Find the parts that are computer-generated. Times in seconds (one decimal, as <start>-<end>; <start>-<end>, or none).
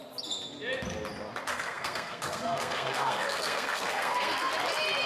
1.5-4.5